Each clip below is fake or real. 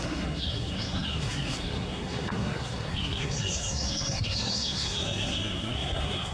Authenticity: fake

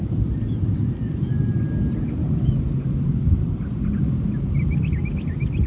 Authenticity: real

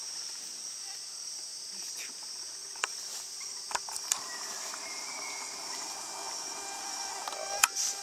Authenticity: real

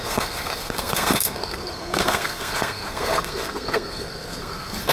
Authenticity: fake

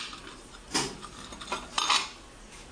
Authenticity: real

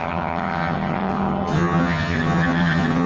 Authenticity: fake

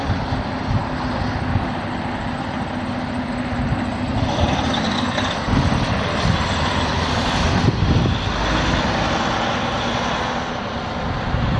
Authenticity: real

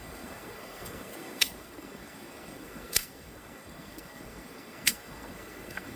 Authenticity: fake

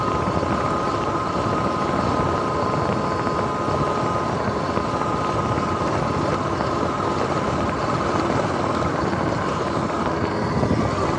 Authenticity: real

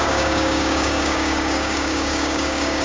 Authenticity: fake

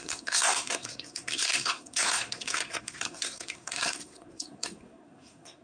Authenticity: fake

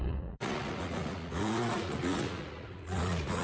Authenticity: fake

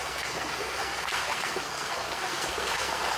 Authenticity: fake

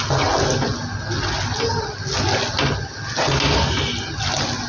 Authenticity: real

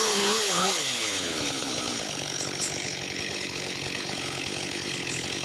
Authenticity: fake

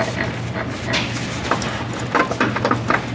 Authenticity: real